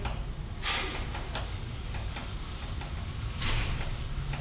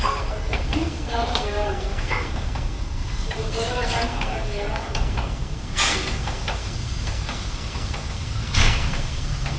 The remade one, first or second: second